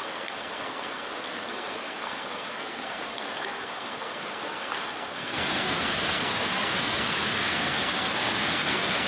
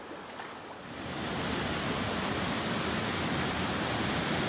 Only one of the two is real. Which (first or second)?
second